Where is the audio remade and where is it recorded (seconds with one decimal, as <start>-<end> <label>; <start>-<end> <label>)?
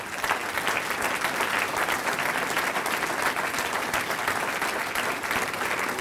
0.0-6.0 recorded